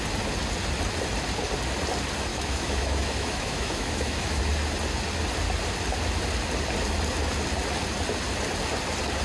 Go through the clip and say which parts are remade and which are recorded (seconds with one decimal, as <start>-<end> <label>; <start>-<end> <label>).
0.0-2.3 recorded; 2.3-4.4 remade; 4.4-9.2 recorded

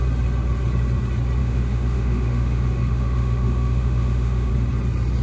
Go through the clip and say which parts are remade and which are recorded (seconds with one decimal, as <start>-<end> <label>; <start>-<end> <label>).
0.0-1.4 recorded; 1.4-4.5 remade; 4.5-5.2 recorded